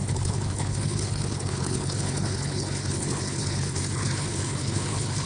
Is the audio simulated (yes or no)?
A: yes